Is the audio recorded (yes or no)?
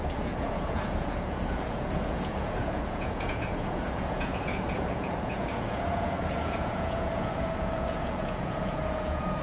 no